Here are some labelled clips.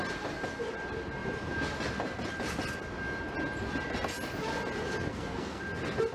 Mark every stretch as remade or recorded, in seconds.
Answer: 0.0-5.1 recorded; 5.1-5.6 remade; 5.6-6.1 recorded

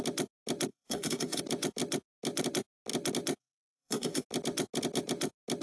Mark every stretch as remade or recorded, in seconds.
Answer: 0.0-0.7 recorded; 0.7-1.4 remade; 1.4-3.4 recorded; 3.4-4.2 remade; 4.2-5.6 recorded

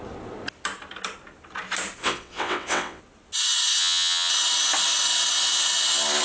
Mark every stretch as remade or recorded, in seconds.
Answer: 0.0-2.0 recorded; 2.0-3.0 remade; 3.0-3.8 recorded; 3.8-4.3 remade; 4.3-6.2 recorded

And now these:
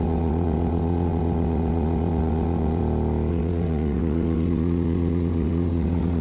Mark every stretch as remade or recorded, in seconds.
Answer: 0.0-2.8 remade; 2.8-3.3 recorded; 3.3-6.2 remade

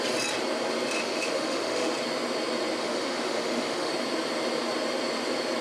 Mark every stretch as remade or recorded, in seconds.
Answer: 0.0-1.0 recorded; 1.0-1.9 remade; 1.9-2.8 recorded; 2.8-3.9 remade; 3.9-5.6 recorded

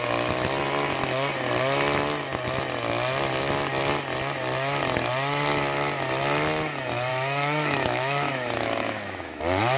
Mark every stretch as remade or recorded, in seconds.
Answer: 0.0-7.1 recorded; 7.1-9.4 remade; 9.4-9.8 recorded

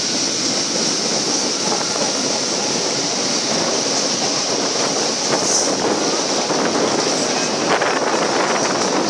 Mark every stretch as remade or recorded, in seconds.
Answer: 0.0-9.1 recorded